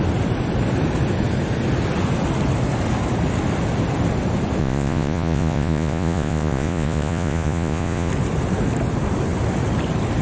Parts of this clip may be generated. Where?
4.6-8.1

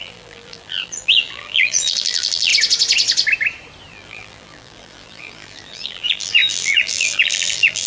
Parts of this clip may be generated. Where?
0.0-2.5; 3.9-7.9

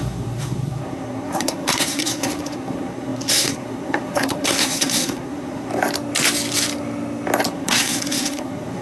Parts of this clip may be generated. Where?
0.0-5.7; 7.5-8.8